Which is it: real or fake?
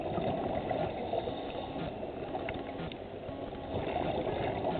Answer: real